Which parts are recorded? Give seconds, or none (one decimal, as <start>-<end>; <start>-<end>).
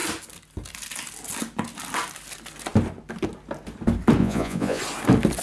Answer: 0.0-4.2; 4.8-5.4